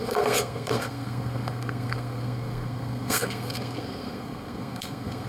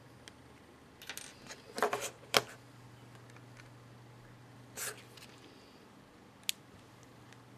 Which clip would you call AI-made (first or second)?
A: first